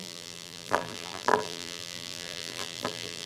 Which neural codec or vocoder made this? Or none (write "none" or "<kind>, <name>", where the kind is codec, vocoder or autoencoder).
vocoder, BigVGAN v2